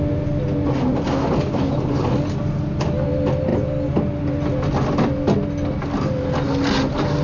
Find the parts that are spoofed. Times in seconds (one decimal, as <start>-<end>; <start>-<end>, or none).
none